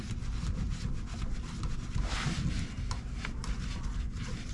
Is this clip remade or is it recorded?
recorded